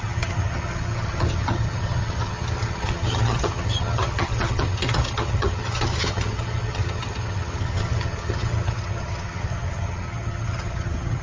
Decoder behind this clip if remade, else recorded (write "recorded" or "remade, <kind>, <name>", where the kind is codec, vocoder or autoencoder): remade, vocoder, HiFi-GAN